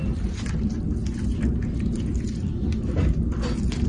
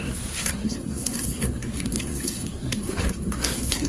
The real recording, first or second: first